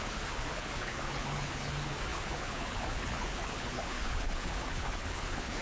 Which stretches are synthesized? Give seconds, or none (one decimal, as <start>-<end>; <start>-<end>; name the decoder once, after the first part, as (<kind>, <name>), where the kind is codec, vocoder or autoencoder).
0.0-5.6 (codec, HILCodec)